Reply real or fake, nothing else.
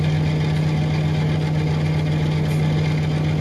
real